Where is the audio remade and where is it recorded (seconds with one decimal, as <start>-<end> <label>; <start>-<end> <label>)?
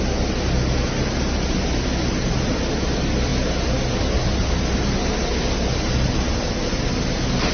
0.0-7.5 recorded